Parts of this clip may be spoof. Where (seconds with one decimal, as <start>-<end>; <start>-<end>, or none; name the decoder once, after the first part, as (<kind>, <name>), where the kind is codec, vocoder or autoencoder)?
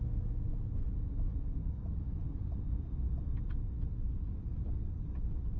1.8-5.6 (vocoder, BigVGAN v2)